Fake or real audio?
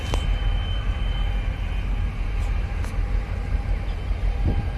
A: real